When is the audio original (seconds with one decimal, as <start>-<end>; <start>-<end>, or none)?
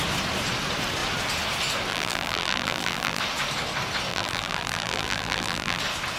0.0-1.9; 3.2-4.1; 5.8-6.2